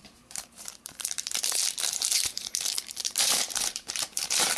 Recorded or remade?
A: remade